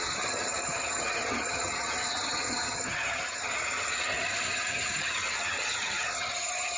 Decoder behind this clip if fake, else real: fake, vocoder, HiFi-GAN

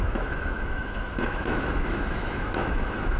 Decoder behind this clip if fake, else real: fake, autoencoder, DAC-VAE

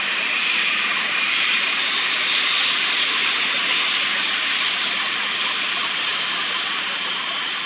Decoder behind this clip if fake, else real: real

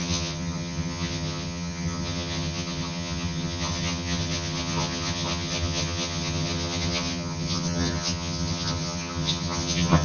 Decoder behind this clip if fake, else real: fake, vocoder, HiFi-GAN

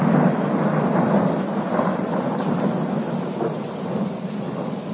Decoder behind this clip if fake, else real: real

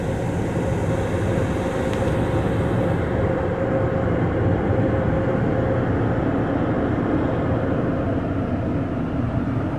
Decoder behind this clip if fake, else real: real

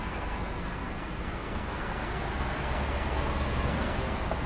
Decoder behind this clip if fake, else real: fake, codec, SNAC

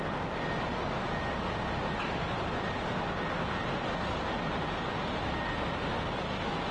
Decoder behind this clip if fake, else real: real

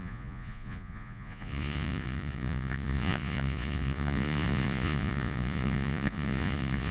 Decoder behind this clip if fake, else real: fake, vocoder, Vocos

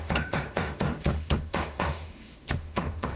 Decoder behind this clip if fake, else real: fake, autoencoder, DAC-VAE